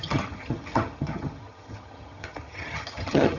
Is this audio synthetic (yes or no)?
yes